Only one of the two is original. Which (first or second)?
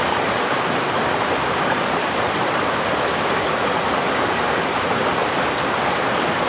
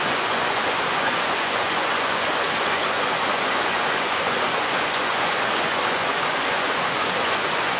first